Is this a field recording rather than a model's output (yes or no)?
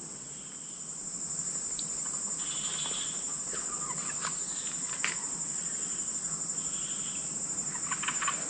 yes